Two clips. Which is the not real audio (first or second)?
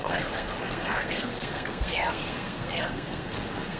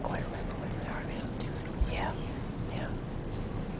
first